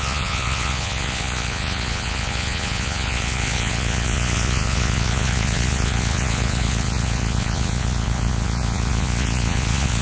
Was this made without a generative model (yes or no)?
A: no